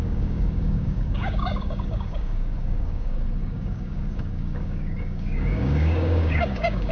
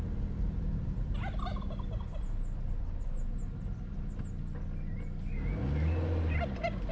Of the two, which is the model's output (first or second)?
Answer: first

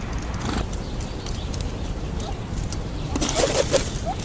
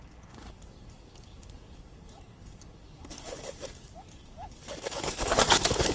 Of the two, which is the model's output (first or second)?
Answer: second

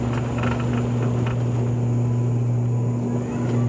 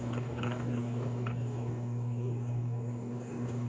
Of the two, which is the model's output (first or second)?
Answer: second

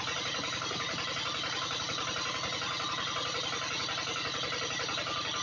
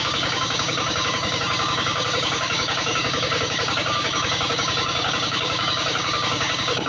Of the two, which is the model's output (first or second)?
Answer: second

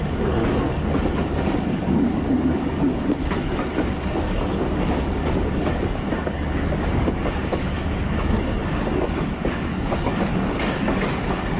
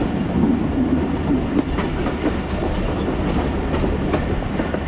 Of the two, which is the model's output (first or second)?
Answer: first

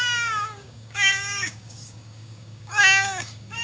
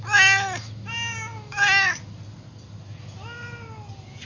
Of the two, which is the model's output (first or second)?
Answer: first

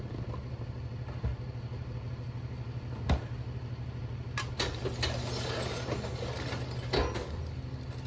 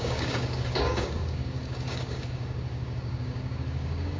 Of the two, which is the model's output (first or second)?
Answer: second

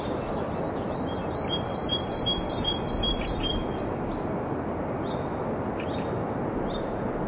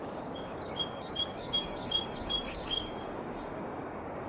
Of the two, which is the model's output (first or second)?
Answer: second